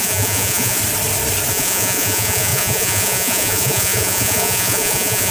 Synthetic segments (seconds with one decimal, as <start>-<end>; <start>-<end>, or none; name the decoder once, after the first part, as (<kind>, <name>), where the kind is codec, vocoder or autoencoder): 0.0-0.8 (vocoder, Vocos); 1.5-5.3

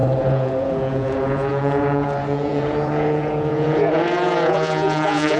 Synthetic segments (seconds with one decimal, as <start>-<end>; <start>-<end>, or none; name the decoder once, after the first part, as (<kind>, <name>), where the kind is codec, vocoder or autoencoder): 0.0-5.4 (vocoder, Vocos)

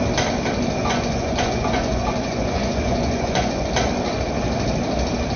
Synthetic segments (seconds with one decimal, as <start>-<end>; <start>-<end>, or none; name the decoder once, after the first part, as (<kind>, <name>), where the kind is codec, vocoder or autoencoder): 0.8-3.6 (vocoder, Vocos)